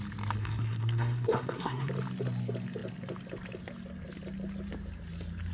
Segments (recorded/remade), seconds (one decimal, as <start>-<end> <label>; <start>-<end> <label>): 0.0-0.4 recorded; 0.4-1.9 remade; 1.9-5.5 recorded